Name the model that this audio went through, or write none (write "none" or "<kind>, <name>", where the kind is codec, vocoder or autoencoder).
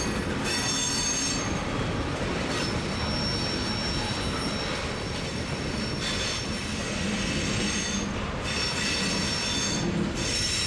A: none